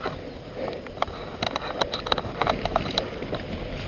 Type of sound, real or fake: real